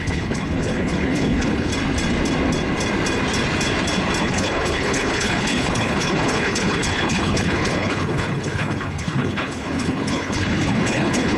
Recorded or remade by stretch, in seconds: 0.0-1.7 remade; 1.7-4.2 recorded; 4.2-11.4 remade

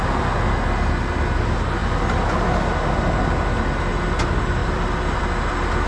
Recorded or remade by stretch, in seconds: 0.0-4.6 recorded; 4.6-5.2 remade; 5.2-5.9 recorded

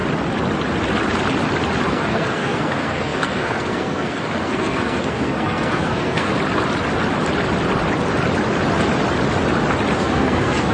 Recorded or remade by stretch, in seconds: 0.0-1.9 recorded; 1.9-6.3 remade; 6.3-10.0 recorded; 10.0-10.7 remade